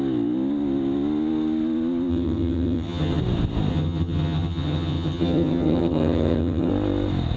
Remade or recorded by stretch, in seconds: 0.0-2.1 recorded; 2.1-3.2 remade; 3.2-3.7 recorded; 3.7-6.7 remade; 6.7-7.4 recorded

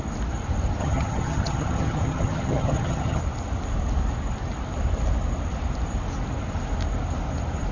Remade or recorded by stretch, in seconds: 0.0-0.8 recorded; 0.8-3.2 remade; 3.2-7.7 recorded

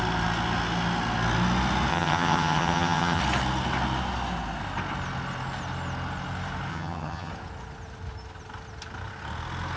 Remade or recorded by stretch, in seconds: 0.0-1.9 recorded; 1.9-3.2 remade; 3.2-6.7 recorded; 6.7-7.3 remade; 7.3-9.8 recorded

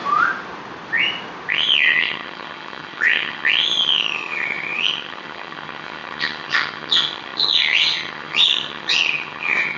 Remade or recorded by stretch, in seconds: 0.0-1.5 recorded; 1.5-9.8 remade

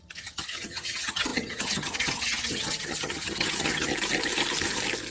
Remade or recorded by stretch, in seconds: 0.0-3.9 remade; 3.9-5.1 recorded

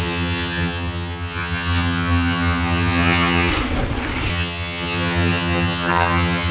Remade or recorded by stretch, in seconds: 0.0-3.5 remade; 3.5-4.3 recorded; 4.3-6.5 remade

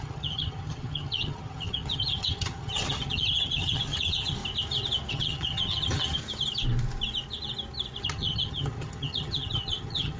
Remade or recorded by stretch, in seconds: 0.0-4.4 remade; 4.4-5.1 recorded; 5.1-6.2 remade; 6.2-8.0 recorded; 8.0-10.2 remade

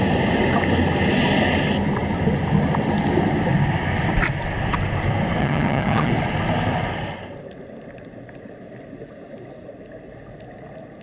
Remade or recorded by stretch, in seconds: 0.0-5.4 recorded; 5.4-6.1 remade; 6.1-11.0 recorded